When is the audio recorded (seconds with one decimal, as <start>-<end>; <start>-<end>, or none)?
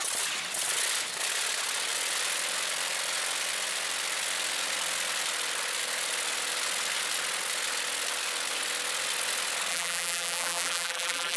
0.0-9.7